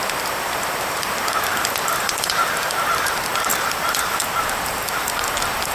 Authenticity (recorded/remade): remade